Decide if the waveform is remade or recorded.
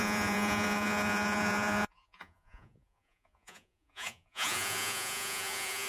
remade